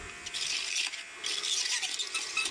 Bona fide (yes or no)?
yes